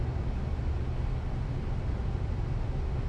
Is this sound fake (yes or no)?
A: no